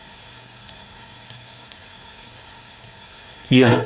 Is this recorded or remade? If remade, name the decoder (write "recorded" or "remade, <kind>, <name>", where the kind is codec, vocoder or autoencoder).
remade, codec, SNAC